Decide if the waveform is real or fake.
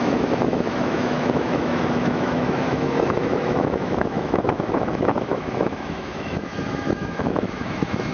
fake